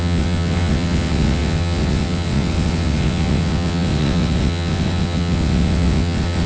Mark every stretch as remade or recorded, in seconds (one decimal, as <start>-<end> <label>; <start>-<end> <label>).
0.0-6.5 remade